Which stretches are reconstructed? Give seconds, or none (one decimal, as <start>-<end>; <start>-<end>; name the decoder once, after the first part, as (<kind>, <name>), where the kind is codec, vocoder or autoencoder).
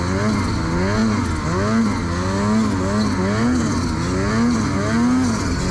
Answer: none